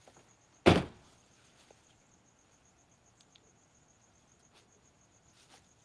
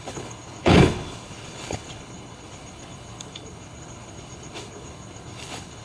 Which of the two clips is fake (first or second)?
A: second